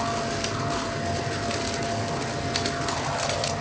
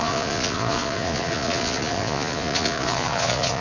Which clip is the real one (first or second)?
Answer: first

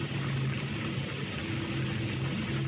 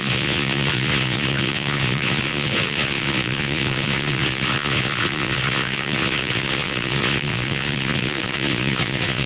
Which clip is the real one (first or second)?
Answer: first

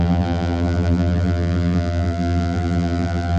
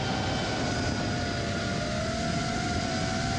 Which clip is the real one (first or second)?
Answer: second